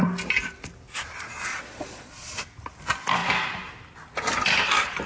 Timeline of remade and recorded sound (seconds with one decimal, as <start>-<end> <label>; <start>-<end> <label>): 0.0-1.5 recorded; 1.5-2.4 remade; 2.4-5.1 recorded